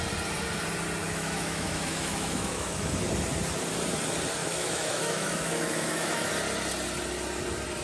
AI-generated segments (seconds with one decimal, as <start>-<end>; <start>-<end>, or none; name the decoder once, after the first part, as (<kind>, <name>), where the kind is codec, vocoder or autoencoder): 1.0-2.9 (autoencoder, DAC-VAE); 4.4-6.3